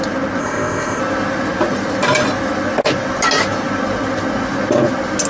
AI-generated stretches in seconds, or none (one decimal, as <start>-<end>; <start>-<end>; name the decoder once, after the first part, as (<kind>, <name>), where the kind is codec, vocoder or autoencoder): 0.4-1.0 (codec, ZipCodec)